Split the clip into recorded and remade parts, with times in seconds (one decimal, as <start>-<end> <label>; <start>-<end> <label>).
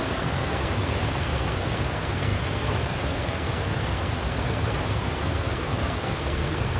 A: 0.0-6.8 remade